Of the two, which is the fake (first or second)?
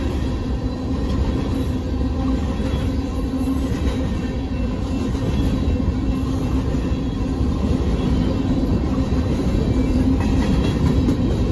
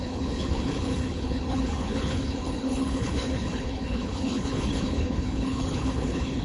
second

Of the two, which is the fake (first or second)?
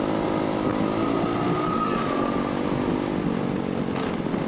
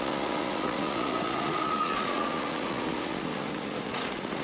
second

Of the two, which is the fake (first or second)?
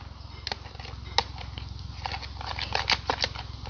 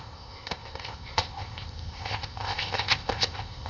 second